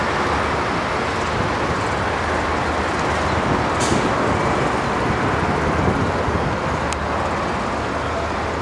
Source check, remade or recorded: recorded